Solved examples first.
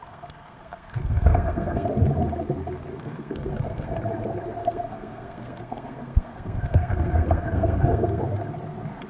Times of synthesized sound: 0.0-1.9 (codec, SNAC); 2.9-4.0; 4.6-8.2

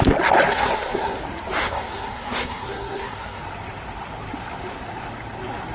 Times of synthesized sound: 0.5-1.2 (codec, SNAC); 1.6-3.4

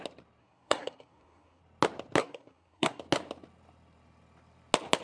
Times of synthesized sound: 0.4-1.6 (codec, SNAC); 2.2-3.0

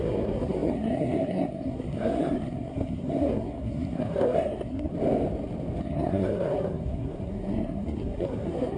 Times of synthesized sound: 0.0-4.9 (codec, SNAC); 5.8-8.8

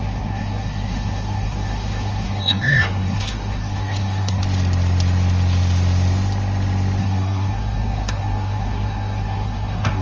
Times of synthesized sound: 0.0-4.4 (codec, SNAC); 7.0-10.0

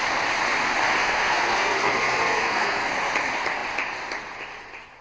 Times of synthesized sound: 1.0-2.9 (codec, SNAC)

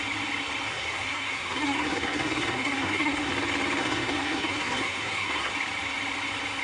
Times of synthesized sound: 0.7-3.3 (codec, SNAC); 3.8-5.5

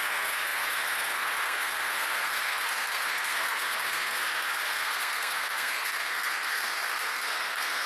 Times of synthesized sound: 0.0-7.9 (codec, SNAC)